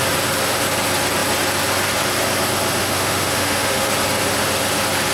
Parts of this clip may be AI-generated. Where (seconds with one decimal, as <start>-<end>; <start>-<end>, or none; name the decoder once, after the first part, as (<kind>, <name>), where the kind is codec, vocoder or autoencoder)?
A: 2.8-3.9 (autoencoder, DAC-VAE)